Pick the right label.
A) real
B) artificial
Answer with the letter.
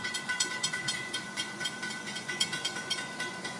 B